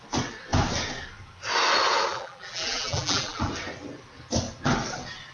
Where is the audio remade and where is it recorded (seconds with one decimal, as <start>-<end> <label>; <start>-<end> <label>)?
0.0-2.1 recorded; 2.1-3.5 remade; 3.5-5.3 recorded